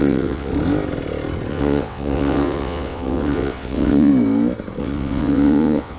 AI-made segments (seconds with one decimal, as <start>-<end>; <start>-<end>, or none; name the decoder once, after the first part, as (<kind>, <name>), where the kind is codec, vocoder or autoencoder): 0.0-0.5 (vocoder, WaveNeXt); 1.5-4.1; 4.8-6.0